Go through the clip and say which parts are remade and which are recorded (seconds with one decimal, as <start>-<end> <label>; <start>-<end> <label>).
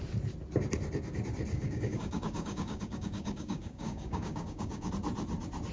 0.0-1.5 recorded; 1.5-4.9 remade; 4.9-5.7 recorded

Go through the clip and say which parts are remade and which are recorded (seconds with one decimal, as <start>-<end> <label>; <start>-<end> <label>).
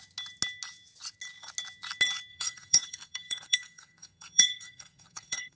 0.0-2.3 recorded; 2.3-5.6 remade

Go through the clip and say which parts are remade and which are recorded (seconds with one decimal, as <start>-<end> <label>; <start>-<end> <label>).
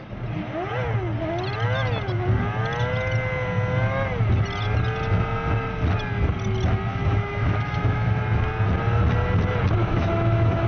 0.0-6.9 recorded; 6.9-8.2 remade; 8.2-9.8 recorded; 9.8-10.7 remade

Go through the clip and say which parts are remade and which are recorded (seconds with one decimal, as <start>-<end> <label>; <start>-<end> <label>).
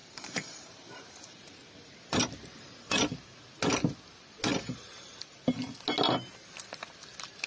0.0-2.7 remade; 2.7-4.5 recorded; 4.5-5.7 remade; 5.7-7.5 recorded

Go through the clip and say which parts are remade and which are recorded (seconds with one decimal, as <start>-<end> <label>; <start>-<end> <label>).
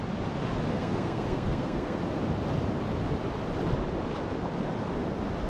0.0-0.7 recorded; 0.7-2.0 remade; 2.0-5.5 recorded